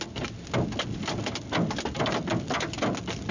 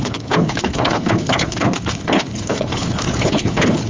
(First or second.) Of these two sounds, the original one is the first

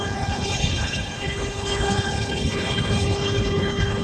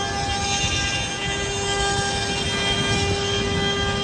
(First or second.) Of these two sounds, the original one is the second